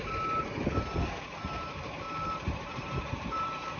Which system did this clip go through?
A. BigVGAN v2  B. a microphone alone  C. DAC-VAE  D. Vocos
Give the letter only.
A